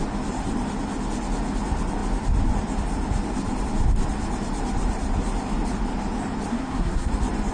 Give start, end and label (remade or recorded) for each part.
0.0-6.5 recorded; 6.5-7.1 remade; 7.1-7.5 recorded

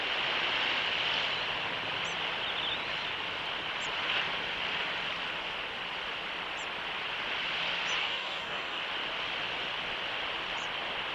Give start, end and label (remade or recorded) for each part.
0.0-8.0 recorded; 8.0-8.8 remade; 8.8-11.1 recorded

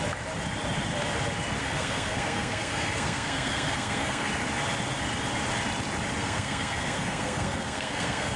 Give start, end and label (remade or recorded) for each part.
0.0-1.6 recorded; 1.6-4.3 remade; 4.3-6.2 recorded; 6.2-8.4 remade